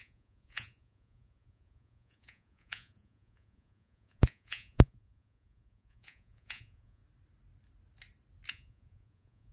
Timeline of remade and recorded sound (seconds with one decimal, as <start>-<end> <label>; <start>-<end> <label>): 0.0-7.0 remade; 7.0-8.5 recorded; 8.5-9.5 remade